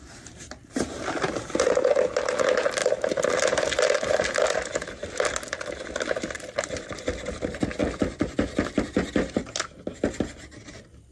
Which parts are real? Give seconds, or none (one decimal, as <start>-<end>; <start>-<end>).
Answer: 0.0-11.1